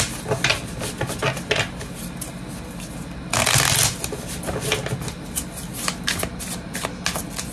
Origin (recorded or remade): recorded